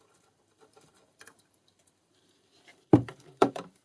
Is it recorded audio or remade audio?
remade